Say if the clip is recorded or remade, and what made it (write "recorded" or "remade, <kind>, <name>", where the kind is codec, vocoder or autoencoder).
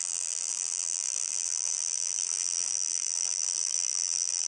remade, vocoder, BigVGAN v2